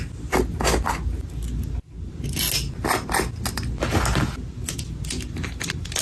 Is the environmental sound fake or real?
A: real